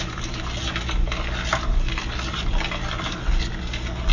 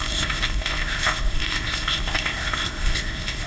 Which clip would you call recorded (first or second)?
first